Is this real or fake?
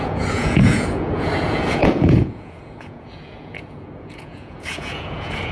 fake